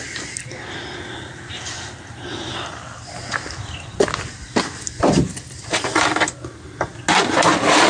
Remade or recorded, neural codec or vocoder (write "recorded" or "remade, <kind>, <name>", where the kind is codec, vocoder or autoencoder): recorded